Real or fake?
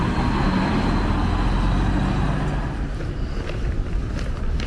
real